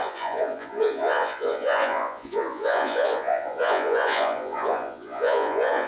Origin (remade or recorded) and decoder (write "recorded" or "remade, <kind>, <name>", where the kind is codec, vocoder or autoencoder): remade, vocoder, Vocos